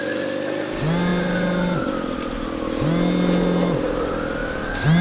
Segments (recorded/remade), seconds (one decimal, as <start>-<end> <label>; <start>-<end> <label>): 0.0-5.0 recorded